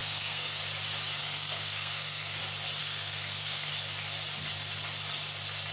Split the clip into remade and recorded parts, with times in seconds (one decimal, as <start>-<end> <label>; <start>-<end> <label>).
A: 0.0-0.6 remade; 0.6-1.2 recorded; 1.2-2.4 remade; 2.4-2.8 recorded; 2.8-3.7 remade; 3.7-5.7 recorded